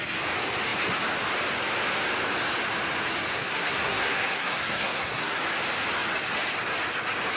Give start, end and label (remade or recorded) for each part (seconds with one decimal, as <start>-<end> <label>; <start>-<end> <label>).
0.0-3.3 recorded; 3.3-5.4 remade; 5.4-7.4 recorded